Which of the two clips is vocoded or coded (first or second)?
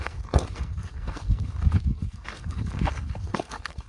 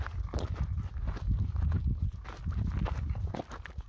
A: first